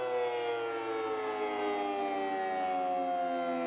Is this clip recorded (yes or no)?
yes